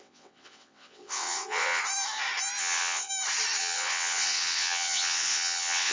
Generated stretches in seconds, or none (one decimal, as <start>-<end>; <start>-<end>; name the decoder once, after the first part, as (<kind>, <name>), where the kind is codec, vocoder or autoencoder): 0.0-1.8 (vocoder, WaveNeXt); 2.6-3.1; 3.6-5.9